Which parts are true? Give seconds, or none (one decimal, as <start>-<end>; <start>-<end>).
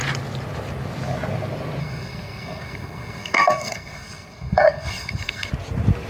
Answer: 0.0-1.8; 5.5-6.1